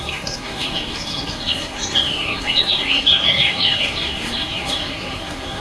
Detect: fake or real fake